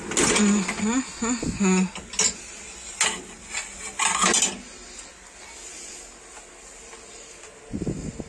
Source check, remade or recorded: recorded